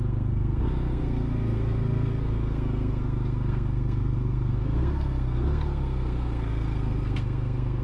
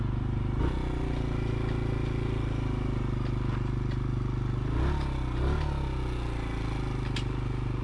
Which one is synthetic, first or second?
first